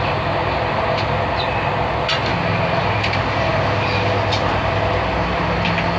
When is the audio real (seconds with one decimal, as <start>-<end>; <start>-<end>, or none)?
0.0-6.0